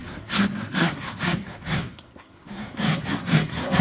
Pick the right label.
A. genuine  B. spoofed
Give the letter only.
B